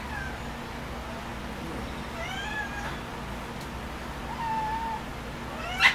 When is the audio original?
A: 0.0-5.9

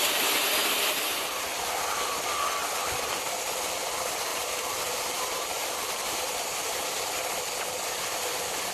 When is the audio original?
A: 0.0-0.6; 1.6-4.3; 6.6-8.7

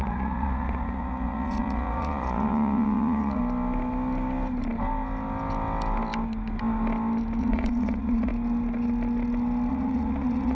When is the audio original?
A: 3.4-7.4; 8.3-9.7

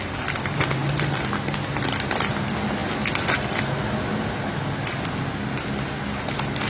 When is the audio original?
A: 0.0-6.7

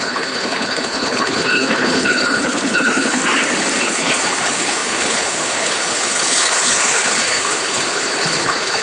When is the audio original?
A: 3.2-3.8

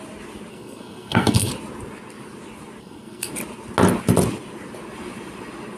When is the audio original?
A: 0.0-0.5; 1.5-2.8; 3.3-5.8

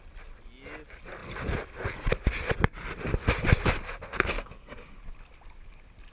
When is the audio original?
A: 0.0-4.3; 5.0-6.1

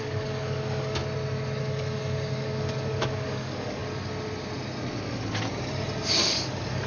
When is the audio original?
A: 1.0-1.6; 3.8-6.3